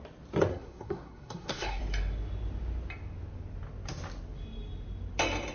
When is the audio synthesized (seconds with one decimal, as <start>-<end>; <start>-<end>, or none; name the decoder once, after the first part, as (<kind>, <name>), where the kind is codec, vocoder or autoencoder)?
0.5-1.8 (codec, SNAC)